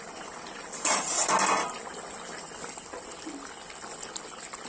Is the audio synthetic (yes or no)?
no